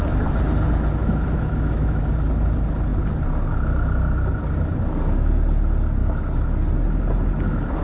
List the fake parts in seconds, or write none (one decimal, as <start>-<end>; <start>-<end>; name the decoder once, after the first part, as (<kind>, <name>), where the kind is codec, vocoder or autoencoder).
1.0-2.0 (autoencoder, DAC-VAE); 6.0-6.5